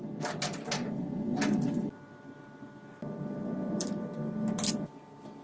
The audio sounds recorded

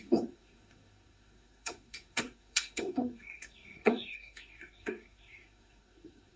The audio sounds remade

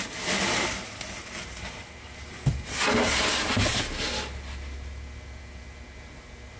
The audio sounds recorded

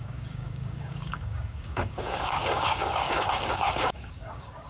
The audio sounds remade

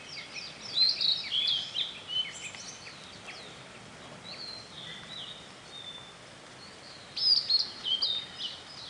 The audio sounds recorded